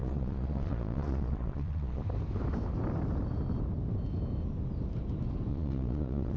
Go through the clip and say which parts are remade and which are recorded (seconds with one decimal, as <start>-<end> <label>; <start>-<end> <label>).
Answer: 0.0-2.0 remade; 2.0-5.5 recorded; 5.5-6.4 remade